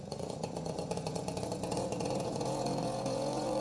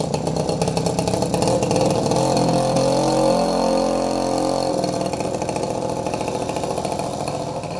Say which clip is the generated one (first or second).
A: first